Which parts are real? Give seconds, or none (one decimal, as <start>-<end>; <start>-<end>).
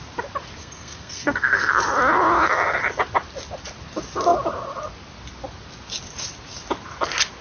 0.0-0.6; 1.7-7.4